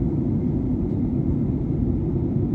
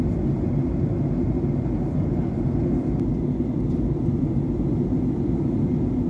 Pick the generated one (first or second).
first